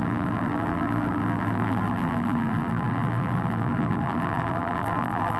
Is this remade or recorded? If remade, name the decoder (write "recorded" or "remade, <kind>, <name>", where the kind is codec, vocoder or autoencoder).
remade, vocoder, BigVGAN v2